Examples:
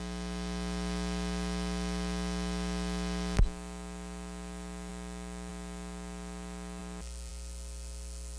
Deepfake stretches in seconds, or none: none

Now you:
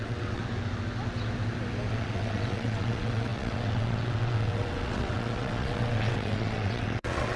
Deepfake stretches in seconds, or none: 0.0-0.4 (vocoder, WaveNeXt); 1.9-7.4

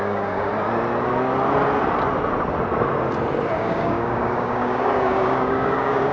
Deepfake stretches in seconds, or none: 0.0-0.5 (codec, DAC); 3.5-6.1